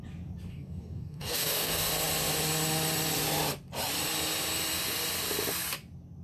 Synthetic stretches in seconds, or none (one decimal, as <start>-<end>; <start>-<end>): 0.5-1.9